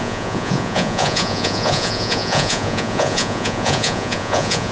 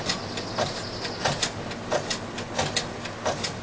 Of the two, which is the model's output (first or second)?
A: first